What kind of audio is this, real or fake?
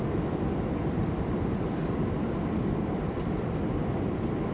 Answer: fake